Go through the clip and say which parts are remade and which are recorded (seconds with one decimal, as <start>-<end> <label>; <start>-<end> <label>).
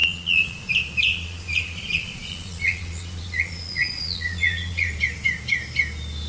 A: 0.0-0.7 remade; 0.7-1.1 recorded; 1.1-4.9 remade; 4.9-6.3 recorded